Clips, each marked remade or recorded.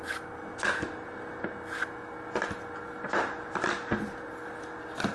recorded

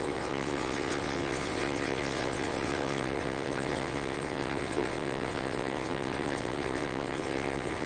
remade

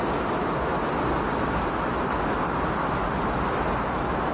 recorded